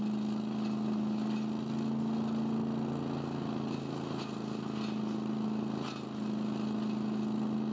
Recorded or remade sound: recorded